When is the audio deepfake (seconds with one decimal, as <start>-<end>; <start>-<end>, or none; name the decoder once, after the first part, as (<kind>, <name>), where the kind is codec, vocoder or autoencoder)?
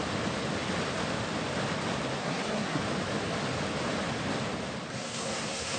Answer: 2.2-2.8 (codec, SNAC); 4.9-5.8